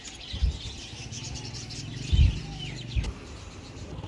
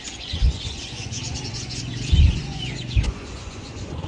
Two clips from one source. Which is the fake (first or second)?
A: second